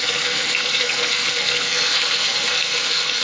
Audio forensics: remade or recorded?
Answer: remade